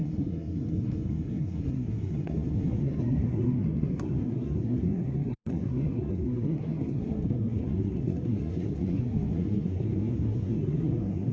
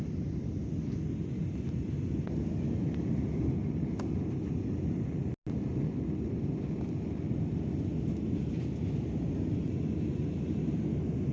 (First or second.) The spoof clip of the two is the first